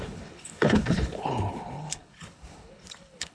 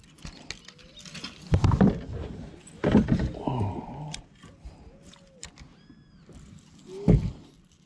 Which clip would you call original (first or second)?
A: second